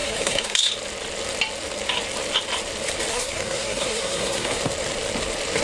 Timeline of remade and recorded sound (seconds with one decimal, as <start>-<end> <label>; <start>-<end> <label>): 0.0-0.7 remade; 0.7-3.1 recorded; 3.1-4.6 remade; 4.6-5.6 recorded